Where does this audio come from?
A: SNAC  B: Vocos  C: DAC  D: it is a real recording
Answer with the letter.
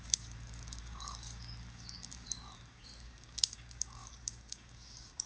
C